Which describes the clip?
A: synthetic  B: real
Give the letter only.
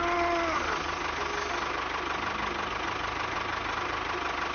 B